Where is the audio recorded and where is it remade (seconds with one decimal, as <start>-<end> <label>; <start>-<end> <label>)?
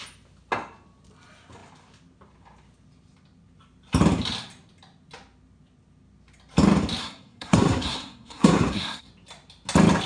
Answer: 0.0-7.0 recorded; 7.0-9.1 remade; 9.1-10.1 recorded